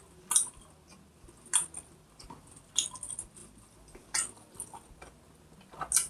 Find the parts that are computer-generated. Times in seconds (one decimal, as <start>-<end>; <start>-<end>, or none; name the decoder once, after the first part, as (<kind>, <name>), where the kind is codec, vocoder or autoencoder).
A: none